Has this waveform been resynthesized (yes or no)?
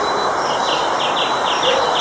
no